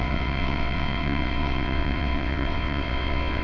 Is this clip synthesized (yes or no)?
yes